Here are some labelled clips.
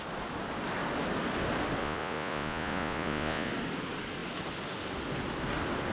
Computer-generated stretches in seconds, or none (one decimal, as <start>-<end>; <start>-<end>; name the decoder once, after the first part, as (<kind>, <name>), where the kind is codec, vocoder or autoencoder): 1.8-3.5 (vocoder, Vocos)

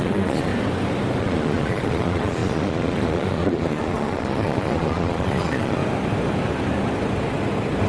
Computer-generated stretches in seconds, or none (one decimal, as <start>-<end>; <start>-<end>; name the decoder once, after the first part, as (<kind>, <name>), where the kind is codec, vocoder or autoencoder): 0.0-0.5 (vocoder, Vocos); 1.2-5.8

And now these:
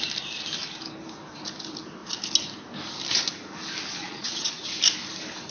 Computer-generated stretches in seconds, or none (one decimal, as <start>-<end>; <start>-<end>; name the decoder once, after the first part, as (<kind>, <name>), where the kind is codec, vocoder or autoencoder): 3.9-4.6 (vocoder, Vocos)

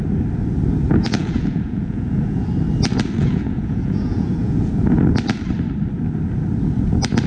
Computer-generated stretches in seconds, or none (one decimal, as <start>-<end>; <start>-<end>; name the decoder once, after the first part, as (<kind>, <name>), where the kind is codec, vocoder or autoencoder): 1.0-2.5 (vocoder, Vocos); 3.2-4.7